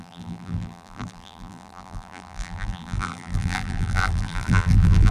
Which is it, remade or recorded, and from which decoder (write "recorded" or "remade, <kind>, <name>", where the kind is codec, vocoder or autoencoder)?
remade, vocoder, BigVGAN v2